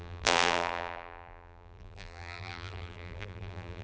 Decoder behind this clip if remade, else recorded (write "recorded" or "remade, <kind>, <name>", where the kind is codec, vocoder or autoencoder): remade, vocoder, BigVGAN v2